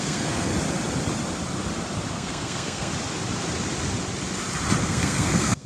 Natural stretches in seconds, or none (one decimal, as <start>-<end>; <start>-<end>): 0.5-2.1; 2.9-4.8